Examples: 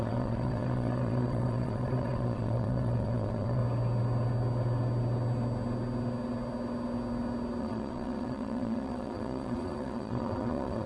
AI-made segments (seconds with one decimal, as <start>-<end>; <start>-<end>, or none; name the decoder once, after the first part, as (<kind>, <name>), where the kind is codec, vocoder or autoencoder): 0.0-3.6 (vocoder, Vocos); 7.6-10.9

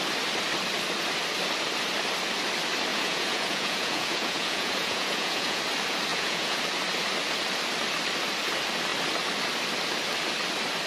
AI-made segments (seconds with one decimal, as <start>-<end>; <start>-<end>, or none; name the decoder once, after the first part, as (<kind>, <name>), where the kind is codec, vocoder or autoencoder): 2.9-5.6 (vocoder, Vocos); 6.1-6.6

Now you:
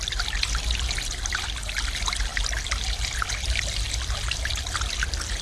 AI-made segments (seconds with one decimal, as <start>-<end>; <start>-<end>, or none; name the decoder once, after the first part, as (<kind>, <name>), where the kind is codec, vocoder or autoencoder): none